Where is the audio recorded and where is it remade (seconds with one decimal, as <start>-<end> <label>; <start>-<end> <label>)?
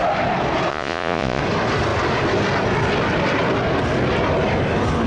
0.0-0.7 recorded; 0.7-1.4 remade; 1.4-5.1 recorded